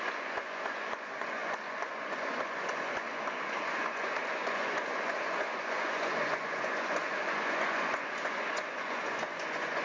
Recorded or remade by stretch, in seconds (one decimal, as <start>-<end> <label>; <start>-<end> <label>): 0.0-9.8 remade